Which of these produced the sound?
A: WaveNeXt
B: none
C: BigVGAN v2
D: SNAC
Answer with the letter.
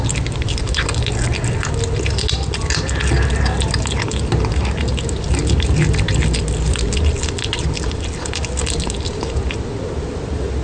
B